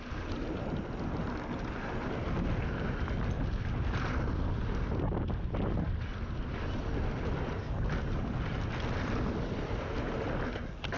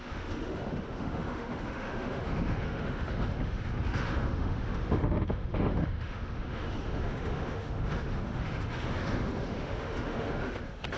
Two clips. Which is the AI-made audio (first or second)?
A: second